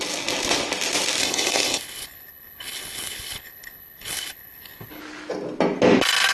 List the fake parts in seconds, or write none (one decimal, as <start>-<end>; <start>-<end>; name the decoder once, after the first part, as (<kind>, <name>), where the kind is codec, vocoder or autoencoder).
1.2-5.0 (codec, HILCodec)